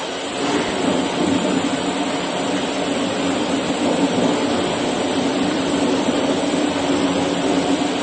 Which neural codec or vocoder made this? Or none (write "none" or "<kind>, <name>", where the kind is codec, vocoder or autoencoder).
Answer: vocoder, BigVGAN v2